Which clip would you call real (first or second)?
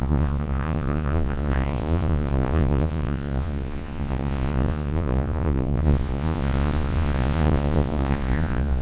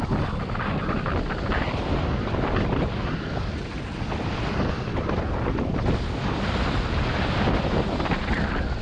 second